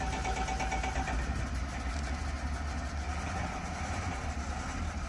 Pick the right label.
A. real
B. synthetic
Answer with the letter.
A